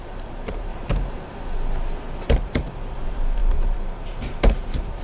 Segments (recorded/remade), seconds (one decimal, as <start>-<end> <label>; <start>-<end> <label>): 0.0-0.7 remade; 0.7-2.3 recorded; 2.3-5.0 remade